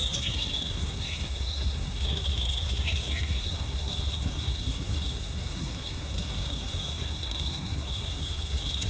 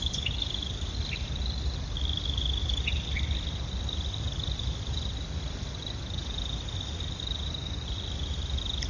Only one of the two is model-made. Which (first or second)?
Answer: first